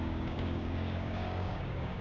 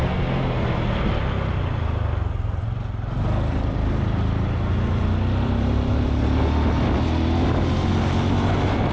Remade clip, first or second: first